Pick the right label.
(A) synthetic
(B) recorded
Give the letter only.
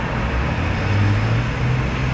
B